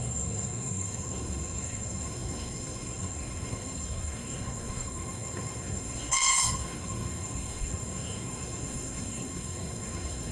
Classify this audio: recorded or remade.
remade